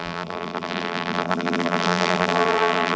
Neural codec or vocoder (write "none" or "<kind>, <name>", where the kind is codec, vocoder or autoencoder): vocoder, BigVGAN v2